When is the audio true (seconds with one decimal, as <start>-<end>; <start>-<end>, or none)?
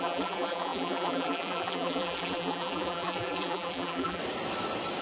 4.2-5.0